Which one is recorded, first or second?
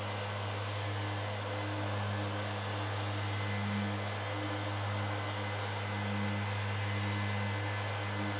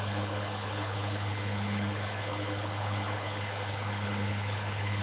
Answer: first